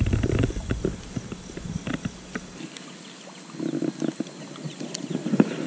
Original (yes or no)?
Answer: yes